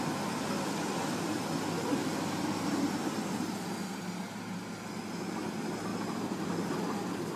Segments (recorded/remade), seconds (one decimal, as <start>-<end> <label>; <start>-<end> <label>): 0.0-7.4 recorded